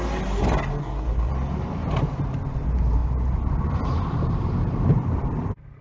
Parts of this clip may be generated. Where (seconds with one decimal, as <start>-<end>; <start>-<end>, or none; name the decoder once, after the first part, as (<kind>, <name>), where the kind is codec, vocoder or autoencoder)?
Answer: 0.8-1.3 (codec, SNAC)